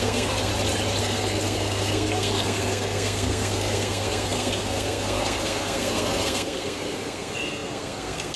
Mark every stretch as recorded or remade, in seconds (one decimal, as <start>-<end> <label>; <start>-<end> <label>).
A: 0.0-0.5 remade; 0.5-1.0 recorded; 1.0-8.4 remade